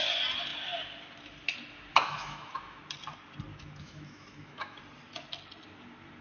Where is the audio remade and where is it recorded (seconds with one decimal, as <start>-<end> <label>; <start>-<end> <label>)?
0.0-1.9 recorded; 1.9-2.8 remade; 2.8-3.5 recorded; 3.5-4.8 remade; 4.8-6.2 recorded